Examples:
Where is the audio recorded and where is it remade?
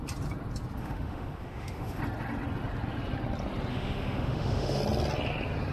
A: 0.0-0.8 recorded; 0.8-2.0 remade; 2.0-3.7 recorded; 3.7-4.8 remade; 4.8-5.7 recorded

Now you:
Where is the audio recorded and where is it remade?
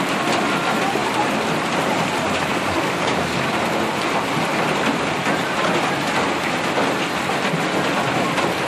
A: 0.0-2.5 recorded; 2.5-3.5 remade; 3.5-8.7 recorded